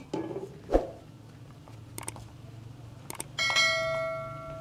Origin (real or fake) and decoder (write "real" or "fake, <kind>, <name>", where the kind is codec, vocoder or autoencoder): real